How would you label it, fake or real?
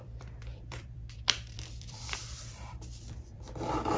fake